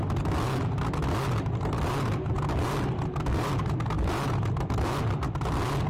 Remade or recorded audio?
recorded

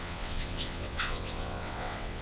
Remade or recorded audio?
remade